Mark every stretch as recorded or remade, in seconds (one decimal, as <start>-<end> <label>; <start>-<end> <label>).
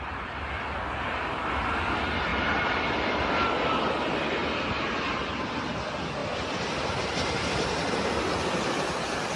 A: 0.0-2.3 recorded; 2.3-3.3 remade; 3.3-6.2 recorded; 6.2-7.9 remade; 7.9-9.4 recorded